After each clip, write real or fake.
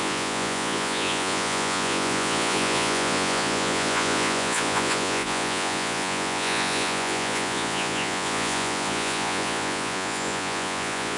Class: fake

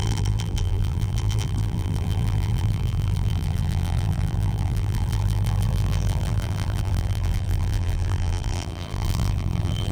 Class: fake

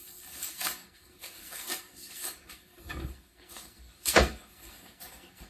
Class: fake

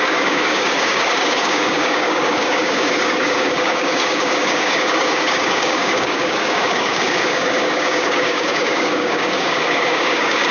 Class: fake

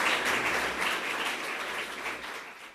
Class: real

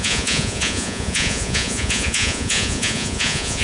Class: fake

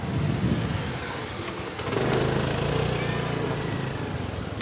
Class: real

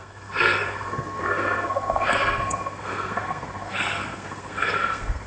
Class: fake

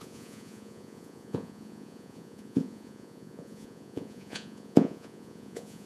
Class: fake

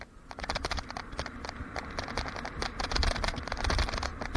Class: real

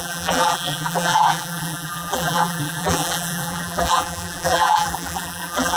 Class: fake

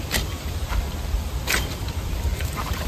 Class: fake